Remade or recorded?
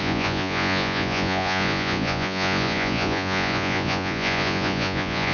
remade